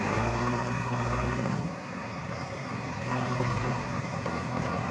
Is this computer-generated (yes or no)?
yes